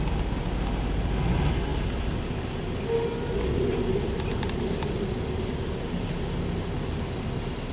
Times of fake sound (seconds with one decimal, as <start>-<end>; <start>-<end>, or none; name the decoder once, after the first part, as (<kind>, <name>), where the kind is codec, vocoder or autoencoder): none